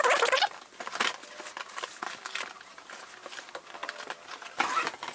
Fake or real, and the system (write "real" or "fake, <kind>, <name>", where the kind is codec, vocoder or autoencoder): real